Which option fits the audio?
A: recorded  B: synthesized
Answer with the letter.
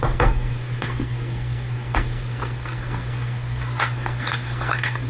B